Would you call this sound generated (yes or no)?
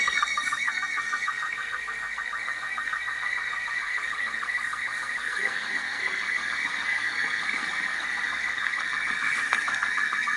yes